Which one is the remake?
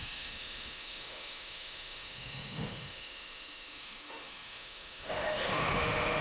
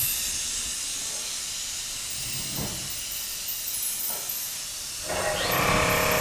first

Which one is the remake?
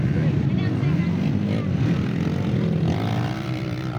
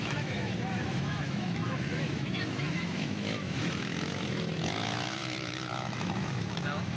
second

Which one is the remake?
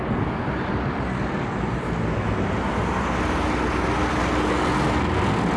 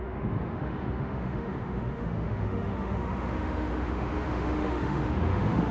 second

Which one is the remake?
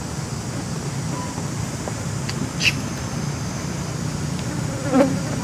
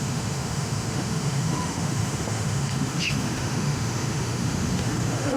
second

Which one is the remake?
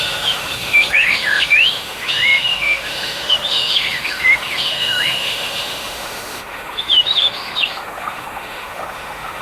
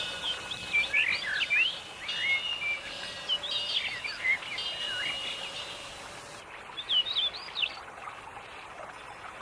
first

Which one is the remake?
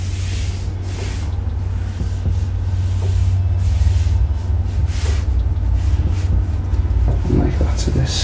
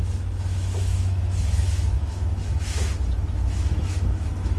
second